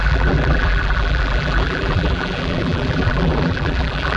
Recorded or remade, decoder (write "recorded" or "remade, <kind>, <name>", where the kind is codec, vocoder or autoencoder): remade, vocoder, BigVGAN v2